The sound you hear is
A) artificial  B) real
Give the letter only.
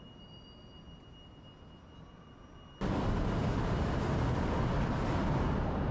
B